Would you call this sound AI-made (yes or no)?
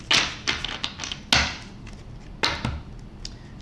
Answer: no